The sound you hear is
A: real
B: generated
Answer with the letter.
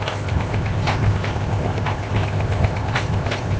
B